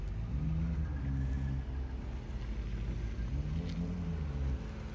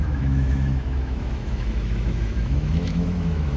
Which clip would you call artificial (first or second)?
second